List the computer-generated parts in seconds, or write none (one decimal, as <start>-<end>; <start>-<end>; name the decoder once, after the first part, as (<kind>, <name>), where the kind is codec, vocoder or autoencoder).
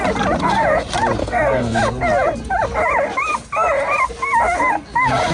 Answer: 1.2-1.8 (codec, SNAC)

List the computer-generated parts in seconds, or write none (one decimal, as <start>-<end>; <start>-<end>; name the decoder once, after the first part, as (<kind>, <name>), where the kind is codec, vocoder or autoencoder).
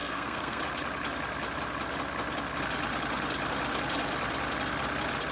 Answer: 0.0-0.6 (codec, SNAC)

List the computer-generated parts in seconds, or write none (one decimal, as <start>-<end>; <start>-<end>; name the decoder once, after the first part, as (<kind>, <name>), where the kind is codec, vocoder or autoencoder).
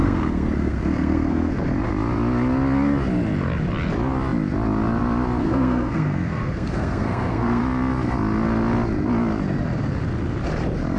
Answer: 0.0-1.5 (codec, SNAC); 5.4-7.6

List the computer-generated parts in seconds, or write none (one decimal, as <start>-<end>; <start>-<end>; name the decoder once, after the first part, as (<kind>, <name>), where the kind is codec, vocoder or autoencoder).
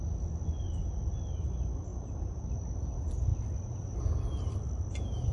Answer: none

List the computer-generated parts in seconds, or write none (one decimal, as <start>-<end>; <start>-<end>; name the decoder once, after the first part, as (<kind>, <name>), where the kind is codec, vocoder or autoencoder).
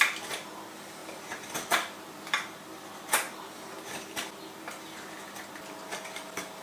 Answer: none